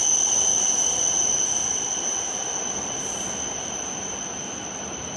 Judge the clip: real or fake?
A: real